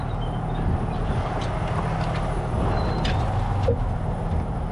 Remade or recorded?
recorded